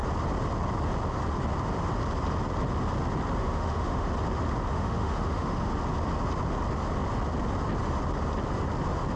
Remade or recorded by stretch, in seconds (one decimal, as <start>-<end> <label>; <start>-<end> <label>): 0.0-3.4 recorded; 3.4-4.1 remade; 4.1-4.7 recorded; 4.7-5.7 remade; 5.7-9.2 recorded